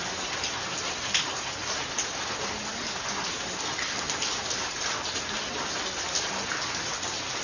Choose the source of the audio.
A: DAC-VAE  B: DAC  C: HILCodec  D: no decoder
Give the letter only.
D